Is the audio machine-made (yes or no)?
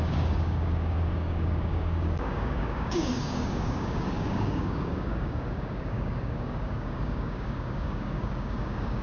yes